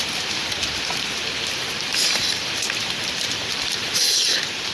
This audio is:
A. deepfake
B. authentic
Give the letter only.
A